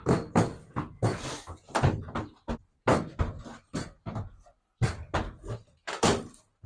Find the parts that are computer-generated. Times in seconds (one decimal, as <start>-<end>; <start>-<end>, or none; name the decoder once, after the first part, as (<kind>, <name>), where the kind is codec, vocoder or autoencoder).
1.1-2.0 (vocoder, BigVGAN v2)